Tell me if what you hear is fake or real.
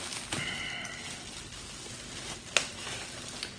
real